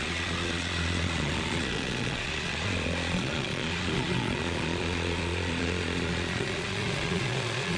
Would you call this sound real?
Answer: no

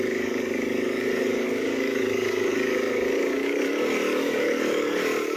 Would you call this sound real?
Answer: no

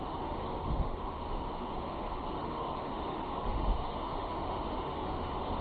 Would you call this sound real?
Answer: no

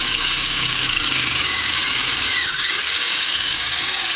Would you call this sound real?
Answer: no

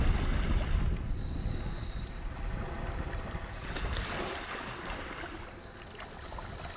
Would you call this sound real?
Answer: yes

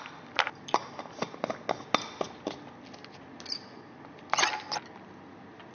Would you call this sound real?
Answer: yes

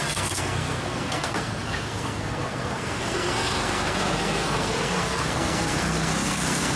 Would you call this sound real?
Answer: no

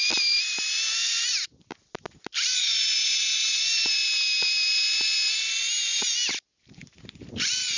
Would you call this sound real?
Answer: yes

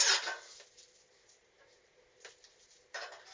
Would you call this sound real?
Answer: yes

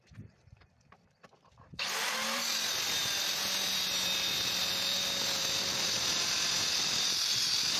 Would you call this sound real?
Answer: no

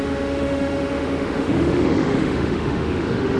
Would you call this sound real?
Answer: no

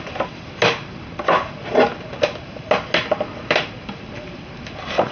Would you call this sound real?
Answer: yes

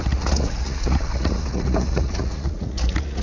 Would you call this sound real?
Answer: no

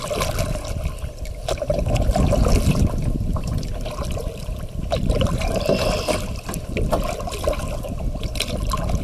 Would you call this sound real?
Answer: yes